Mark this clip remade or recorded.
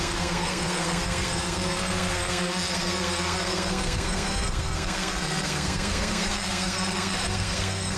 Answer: remade